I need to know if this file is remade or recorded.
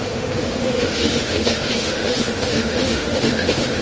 remade